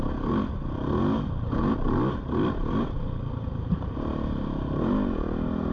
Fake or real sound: real